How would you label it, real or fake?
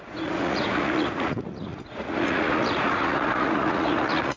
fake